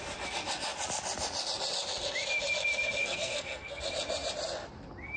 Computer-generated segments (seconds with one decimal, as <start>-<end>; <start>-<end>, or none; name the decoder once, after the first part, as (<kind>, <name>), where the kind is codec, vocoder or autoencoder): 3.0-3.8 (codec, SNAC)